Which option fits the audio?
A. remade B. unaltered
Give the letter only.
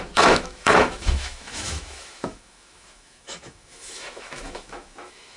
A